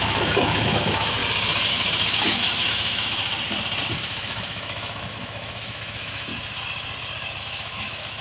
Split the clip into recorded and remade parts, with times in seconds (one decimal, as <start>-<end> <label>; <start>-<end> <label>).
0.0-1.2 remade; 1.2-1.7 recorded; 1.7-3.2 remade; 3.2-4.0 recorded; 4.0-6.3 remade; 6.3-7.4 recorded; 7.4-8.2 remade